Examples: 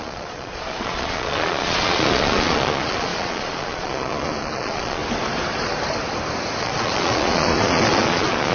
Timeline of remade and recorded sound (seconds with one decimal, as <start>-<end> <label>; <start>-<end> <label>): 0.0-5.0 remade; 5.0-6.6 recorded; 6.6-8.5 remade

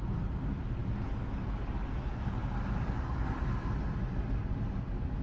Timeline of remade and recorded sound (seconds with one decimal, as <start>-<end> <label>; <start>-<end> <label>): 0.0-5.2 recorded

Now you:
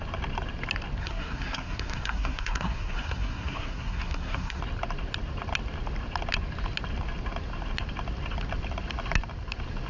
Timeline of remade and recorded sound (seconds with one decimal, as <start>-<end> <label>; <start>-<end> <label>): 0.0-1.0 recorded; 1.0-4.6 remade; 4.6-9.9 recorded